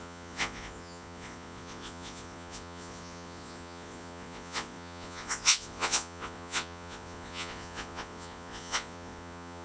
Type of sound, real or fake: fake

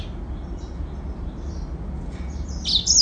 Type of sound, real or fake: real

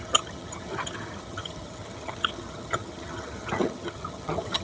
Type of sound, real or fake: fake